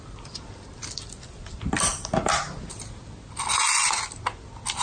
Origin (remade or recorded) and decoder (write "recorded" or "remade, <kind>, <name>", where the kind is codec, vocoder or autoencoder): recorded